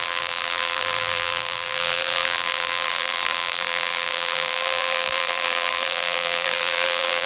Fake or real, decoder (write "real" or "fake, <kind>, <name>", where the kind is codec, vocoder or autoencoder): fake, vocoder, BigVGAN v2